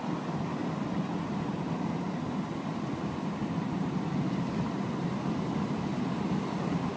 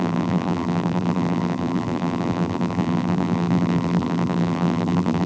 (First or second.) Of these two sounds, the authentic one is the first